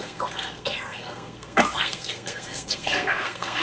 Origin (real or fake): fake